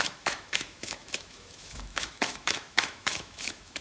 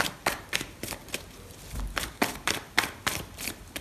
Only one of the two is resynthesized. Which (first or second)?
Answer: first